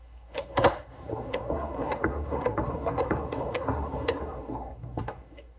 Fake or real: fake